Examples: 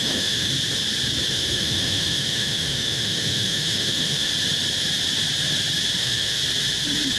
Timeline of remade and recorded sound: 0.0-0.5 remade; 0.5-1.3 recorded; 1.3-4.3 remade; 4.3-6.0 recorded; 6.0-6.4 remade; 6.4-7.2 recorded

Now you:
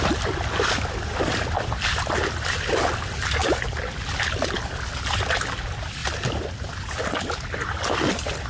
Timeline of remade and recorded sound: 0.0-3.4 recorded; 3.4-4.6 remade; 4.6-6.0 recorded; 6.0-7.0 remade; 7.0-8.5 recorded

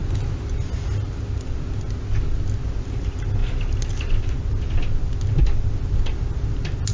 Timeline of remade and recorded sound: 0.0-6.9 recorded

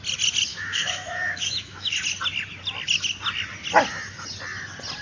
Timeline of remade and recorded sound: 0.0-0.5 recorded; 0.5-1.9 remade; 1.9-5.0 recorded

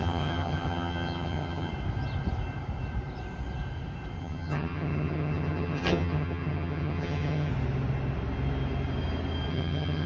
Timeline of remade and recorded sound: 0.0-1.7 remade; 1.7-4.2 recorded; 4.2-7.5 remade; 7.5-9.5 recorded; 9.5-10.1 remade

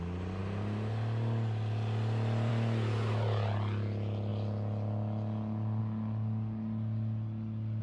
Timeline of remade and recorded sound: 0.0-7.8 recorded

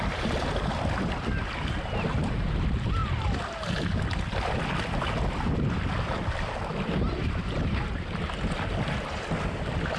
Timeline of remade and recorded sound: 0.0-10.0 recorded

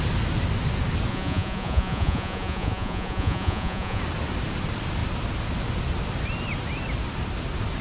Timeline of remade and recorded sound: 0.0-1.1 recorded; 1.1-4.0 remade; 4.0-7.8 recorded